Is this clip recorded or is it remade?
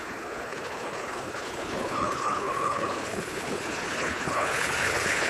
remade